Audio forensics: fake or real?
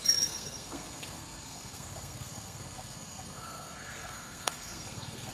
fake